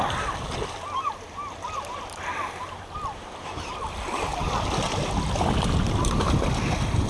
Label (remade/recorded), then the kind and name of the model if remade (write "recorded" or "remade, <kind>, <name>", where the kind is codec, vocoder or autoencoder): recorded